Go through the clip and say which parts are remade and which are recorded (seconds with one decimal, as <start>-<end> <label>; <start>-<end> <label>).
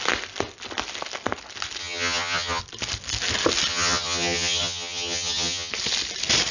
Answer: 0.0-1.8 recorded; 1.8-2.6 remade; 2.6-3.7 recorded; 3.7-5.7 remade; 5.7-6.5 recorded